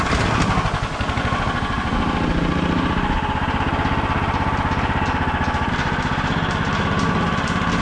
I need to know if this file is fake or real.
real